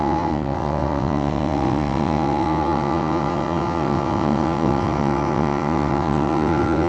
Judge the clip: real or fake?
fake